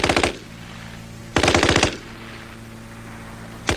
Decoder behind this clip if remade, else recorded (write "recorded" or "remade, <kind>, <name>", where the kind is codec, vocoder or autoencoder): recorded